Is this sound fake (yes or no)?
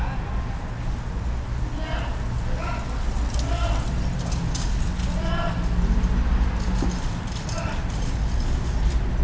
no